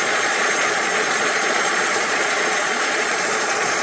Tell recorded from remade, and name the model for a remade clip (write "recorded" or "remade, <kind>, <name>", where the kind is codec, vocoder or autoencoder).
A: remade, vocoder, Vocos